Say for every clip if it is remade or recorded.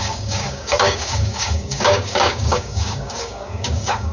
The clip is remade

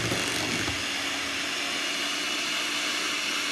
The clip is recorded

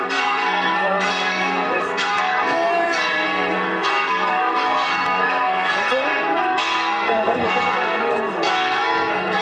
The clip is remade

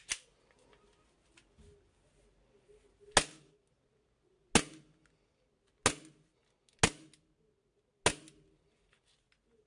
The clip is recorded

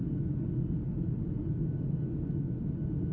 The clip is recorded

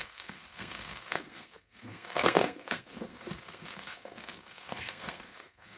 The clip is remade